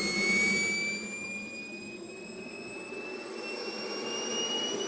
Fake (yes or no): no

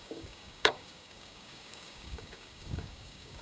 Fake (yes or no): yes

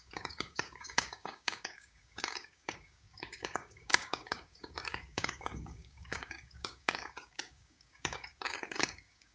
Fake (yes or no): yes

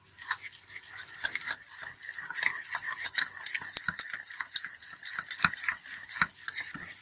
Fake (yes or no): no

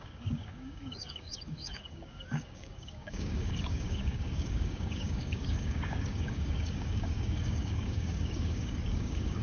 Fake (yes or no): yes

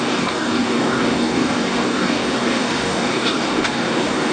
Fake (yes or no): yes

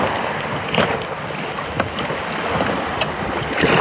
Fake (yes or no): no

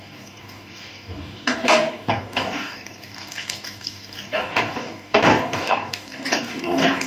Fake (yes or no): yes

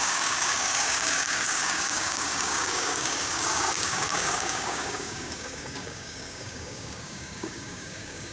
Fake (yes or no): yes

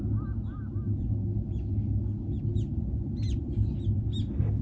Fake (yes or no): no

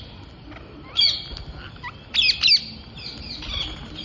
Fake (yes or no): no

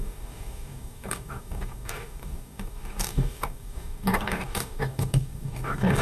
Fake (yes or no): yes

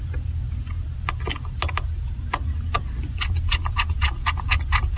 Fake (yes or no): no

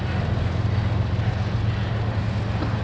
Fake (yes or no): no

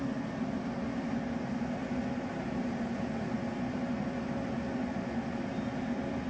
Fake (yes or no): no